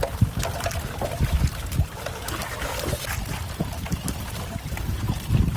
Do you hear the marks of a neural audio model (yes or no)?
no